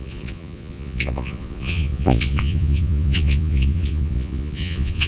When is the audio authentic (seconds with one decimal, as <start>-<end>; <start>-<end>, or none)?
none